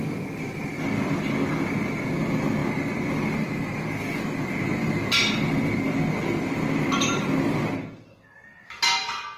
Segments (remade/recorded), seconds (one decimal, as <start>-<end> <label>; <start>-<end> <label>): 0.0-9.4 recorded